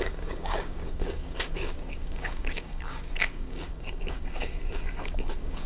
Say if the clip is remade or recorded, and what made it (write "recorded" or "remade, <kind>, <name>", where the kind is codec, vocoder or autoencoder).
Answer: remade, codec, DAC